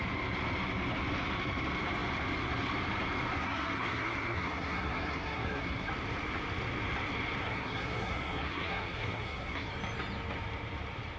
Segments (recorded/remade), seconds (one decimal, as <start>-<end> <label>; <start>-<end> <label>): 0.0-3.4 recorded; 3.4-5.9 remade; 5.9-7.4 recorded; 7.4-9.7 remade; 9.7-11.2 recorded

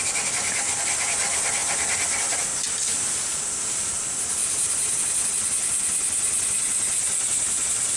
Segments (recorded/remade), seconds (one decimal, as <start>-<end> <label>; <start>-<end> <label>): 0.0-4.4 recorded; 4.4-5.0 remade; 5.0-8.0 recorded